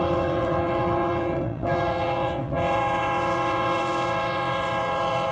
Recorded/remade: remade